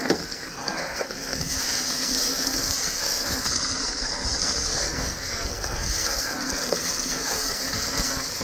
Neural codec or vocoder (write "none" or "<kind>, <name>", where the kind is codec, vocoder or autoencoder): codec, SNAC